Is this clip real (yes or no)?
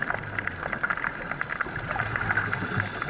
yes